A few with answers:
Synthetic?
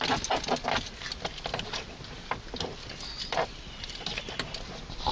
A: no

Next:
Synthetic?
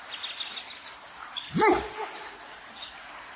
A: no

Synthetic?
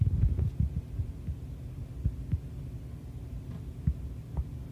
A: no